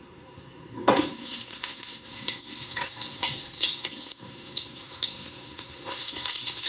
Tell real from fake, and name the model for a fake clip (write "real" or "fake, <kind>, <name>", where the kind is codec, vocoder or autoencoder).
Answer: fake, codec, SNAC